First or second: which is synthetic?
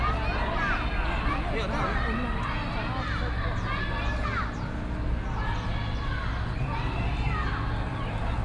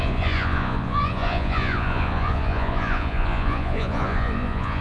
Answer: second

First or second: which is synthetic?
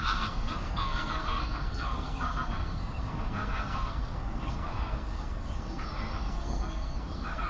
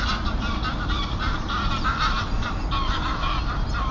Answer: first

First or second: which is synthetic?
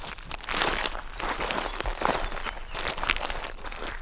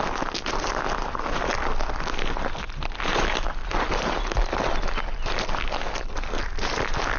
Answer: first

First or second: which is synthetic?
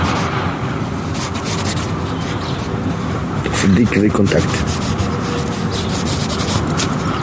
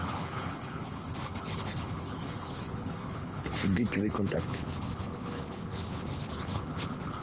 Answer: second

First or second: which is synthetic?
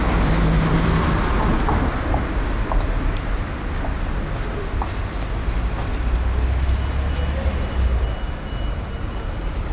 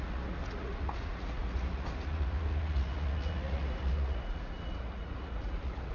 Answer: second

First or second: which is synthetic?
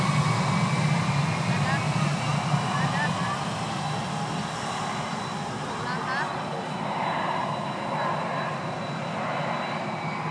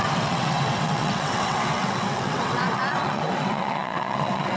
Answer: second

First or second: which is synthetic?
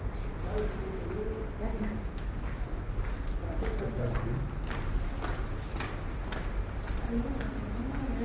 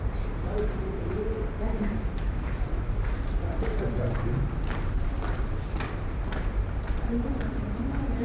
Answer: second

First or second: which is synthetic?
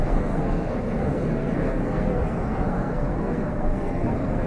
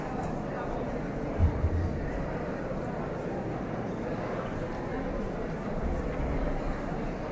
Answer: first